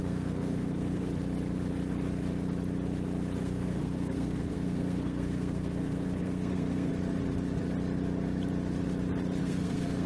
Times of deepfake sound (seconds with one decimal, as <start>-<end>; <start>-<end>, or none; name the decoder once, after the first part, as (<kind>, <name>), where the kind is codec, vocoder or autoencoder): 0.0-1.1 (codec, SNAC); 3.4-6.9; 9.4-10.1